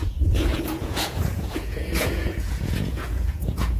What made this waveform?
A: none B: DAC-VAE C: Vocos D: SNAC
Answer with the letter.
C